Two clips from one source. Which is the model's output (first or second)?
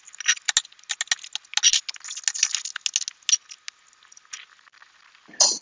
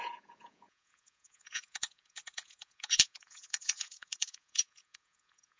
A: second